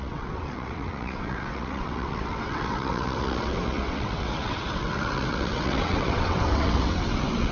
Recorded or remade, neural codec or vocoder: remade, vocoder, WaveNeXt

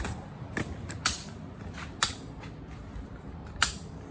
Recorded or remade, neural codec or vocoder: remade, vocoder, BigVGAN v2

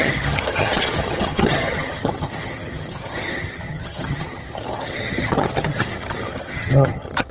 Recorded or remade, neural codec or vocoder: remade, vocoder, HiFi-GAN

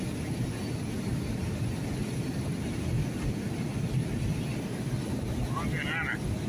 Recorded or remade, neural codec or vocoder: recorded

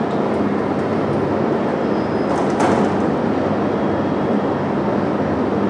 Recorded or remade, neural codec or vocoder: recorded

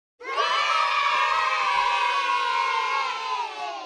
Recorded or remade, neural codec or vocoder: recorded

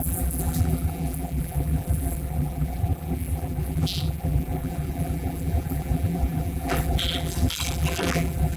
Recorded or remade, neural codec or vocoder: remade, vocoder, BigVGAN v2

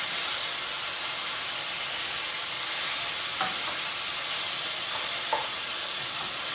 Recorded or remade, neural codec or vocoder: recorded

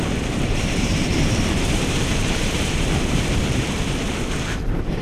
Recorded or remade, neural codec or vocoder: remade, vocoder, BigVGAN v2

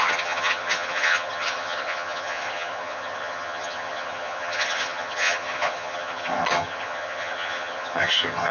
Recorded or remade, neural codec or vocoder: remade, vocoder, HiFi-GAN